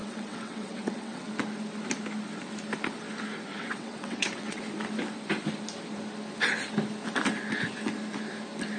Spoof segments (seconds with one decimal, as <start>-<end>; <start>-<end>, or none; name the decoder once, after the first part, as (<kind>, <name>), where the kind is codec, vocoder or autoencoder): 0.0-1.3 (vocoder, WaveNeXt); 3.5-4.6